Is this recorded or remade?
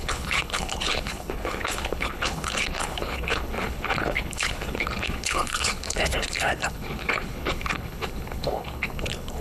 remade